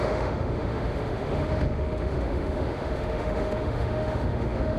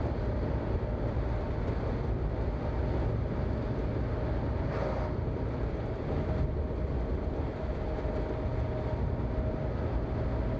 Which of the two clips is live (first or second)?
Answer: second